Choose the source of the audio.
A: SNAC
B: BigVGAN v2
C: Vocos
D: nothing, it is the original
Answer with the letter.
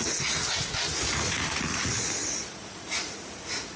C